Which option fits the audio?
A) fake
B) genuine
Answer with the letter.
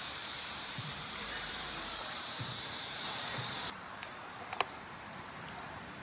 A